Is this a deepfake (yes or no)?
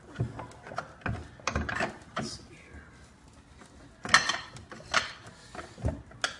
no